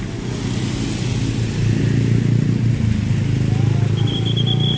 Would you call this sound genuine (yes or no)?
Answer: yes